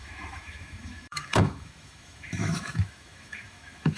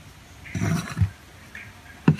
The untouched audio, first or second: second